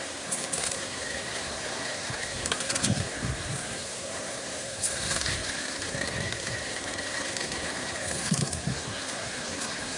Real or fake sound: fake